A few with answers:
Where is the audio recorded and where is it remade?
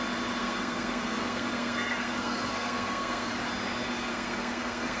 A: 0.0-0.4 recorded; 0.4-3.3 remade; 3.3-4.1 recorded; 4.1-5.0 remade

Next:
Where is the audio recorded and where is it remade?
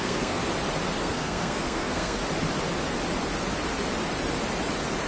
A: 0.0-0.4 remade; 0.4-1.0 recorded; 1.0-2.2 remade; 2.2-5.1 recorded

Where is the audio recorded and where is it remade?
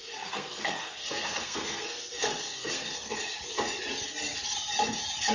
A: 0.0-3.2 remade; 3.2-5.3 recorded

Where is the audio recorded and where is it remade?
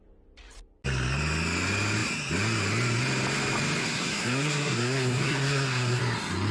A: 0.0-3.8 recorded; 3.8-6.0 remade; 6.0-6.5 recorded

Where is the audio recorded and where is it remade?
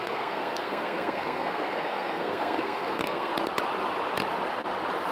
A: 0.0-3.3 remade; 3.3-5.1 recorded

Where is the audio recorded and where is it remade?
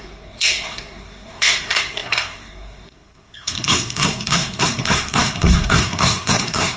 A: 0.0-6.8 remade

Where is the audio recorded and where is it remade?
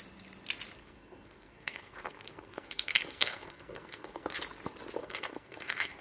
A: 0.0-0.8 recorded; 0.8-4.4 remade; 4.4-5.0 recorded; 5.0-6.0 remade